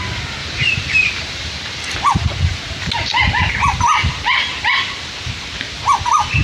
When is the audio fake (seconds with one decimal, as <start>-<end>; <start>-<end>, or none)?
0.4-1.8